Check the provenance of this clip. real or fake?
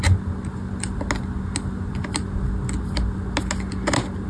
real